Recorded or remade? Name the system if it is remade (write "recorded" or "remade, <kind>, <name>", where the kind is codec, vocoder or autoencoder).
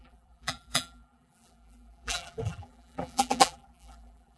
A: remade, vocoder, BigVGAN v2